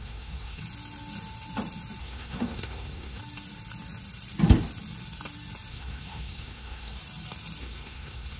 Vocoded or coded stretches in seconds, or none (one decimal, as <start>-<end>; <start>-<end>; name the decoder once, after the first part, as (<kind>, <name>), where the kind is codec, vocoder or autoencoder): 0.0-0.6 (codec, SNAC); 2.0-3.2; 5.7-7.0; 7.6-8.4